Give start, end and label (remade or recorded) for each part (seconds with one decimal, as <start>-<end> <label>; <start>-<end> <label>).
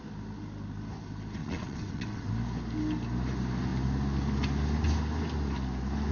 0.0-1.4 recorded; 1.4-2.3 remade; 2.3-6.1 recorded